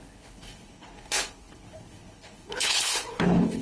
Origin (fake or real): fake